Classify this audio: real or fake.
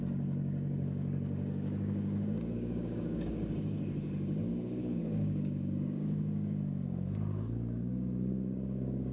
fake